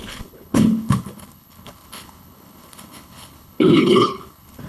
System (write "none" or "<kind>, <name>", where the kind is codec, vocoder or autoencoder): codec, HILCodec